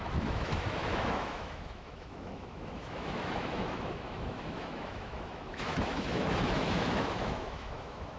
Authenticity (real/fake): fake